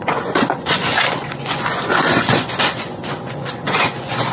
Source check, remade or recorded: remade